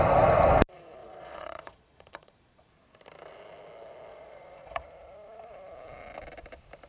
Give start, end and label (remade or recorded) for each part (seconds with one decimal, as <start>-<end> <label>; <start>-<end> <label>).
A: 0.0-1.0 recorded; 1.0-2.7 remade; 2.7-4.1 recorded; 4.1-4.8 remade; 4.8-6.9 recorded